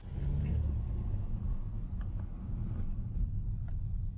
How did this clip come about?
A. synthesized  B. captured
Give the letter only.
B